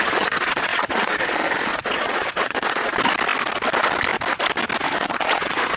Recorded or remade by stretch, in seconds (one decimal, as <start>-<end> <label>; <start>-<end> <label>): 0.0-2.9 remade; 2.9-5.0 recorded; 5.0-5.8 remade